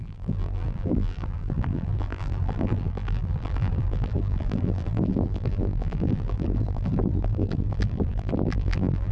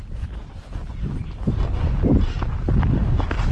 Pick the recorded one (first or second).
second